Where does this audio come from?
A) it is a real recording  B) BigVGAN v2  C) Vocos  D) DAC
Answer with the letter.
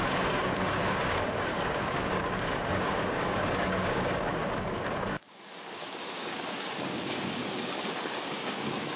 D